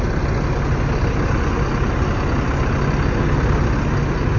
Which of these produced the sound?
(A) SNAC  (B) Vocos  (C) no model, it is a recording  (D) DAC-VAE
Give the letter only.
C